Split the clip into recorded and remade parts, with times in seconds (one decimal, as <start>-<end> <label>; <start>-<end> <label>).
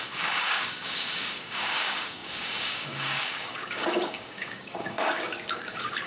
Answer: 0.0-6.1 remade